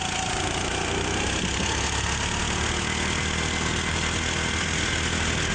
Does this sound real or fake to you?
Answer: real